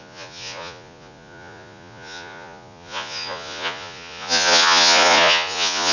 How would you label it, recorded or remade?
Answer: remade